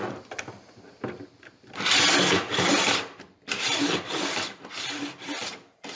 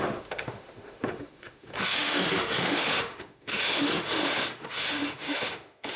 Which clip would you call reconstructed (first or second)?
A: second